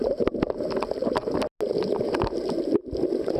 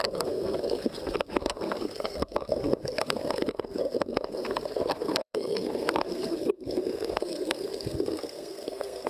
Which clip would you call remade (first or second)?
second